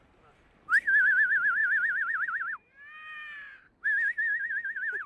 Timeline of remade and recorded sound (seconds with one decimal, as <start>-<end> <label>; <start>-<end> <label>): 0.0-5.1 remade